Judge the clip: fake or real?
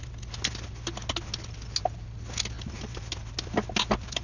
real